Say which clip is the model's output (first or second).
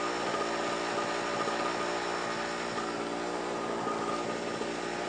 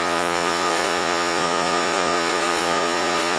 second